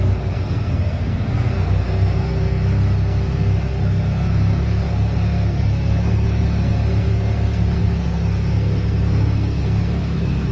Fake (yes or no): yes